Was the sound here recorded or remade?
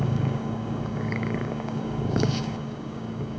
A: remade